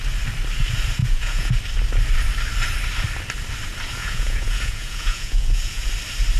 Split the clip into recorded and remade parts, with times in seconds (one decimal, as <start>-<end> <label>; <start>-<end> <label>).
0.0-1.0 recorded; 1.0-1.6 remade; 1.6-4.0 recorded; 4.0-5.9 remade; 5.9-6.4 recorded